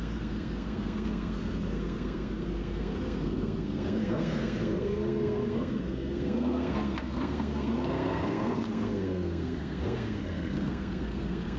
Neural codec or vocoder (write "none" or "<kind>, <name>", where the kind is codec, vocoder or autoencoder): codec, SNAC